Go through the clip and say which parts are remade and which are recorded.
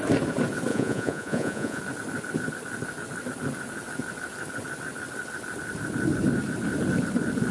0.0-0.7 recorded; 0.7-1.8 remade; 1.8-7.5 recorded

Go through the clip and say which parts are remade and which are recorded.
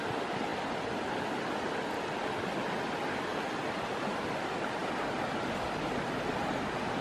0.0-7.0 recorded